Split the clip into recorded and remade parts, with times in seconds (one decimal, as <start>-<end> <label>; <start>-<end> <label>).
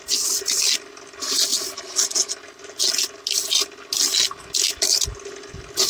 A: 0.0-5.9 recorded